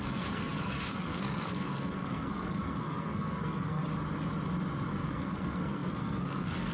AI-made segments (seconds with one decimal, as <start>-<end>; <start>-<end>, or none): 0.0-3.8; 5.1-6.7